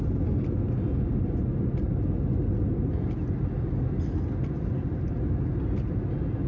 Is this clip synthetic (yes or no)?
no